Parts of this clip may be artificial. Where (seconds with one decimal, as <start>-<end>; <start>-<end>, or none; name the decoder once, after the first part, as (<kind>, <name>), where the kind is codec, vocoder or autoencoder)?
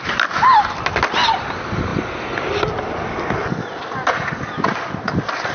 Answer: none